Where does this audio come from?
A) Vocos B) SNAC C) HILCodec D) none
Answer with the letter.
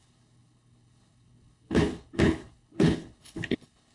C